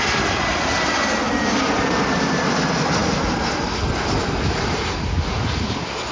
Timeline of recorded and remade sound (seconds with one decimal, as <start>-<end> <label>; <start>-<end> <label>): 0.0-6.1 recorded